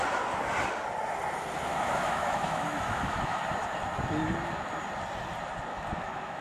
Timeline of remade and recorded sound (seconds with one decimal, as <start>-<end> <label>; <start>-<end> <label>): 0.0-1.7 recorded; 1.7-3.4 remade; 3.4-5.7 recorded; 5.7-6.4 remade